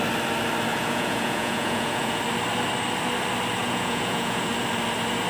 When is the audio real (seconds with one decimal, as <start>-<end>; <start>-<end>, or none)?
0.0-0.7; 2.2-3.6; 4.5-5.3